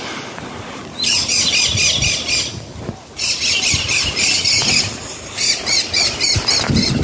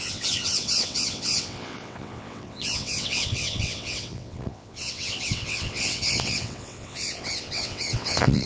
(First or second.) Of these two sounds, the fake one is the second